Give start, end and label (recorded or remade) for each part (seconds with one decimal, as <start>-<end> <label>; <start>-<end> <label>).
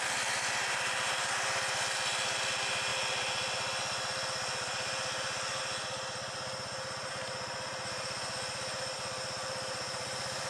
0.0-10.5 recorded